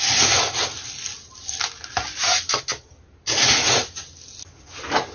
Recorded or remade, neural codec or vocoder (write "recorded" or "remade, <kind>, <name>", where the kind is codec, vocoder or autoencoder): recorded